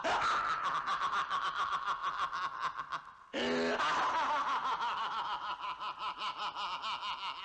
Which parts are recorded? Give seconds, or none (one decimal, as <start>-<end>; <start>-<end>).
0.0-4.6; 7.0-7.4